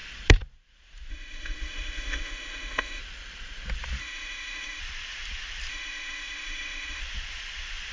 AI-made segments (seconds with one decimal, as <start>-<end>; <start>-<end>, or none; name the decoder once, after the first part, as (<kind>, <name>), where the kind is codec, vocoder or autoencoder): 1.1-3.0 (autoencoder, DAC-VAE); 4.0-4.8; 5.7-7.0